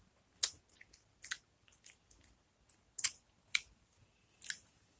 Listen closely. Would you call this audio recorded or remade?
recorded